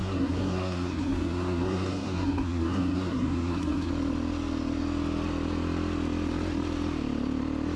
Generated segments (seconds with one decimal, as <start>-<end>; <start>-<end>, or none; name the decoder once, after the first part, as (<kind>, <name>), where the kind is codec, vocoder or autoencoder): 0.0-3.9 (codec, SNAC)